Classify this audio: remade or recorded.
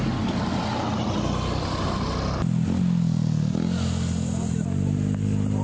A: recorded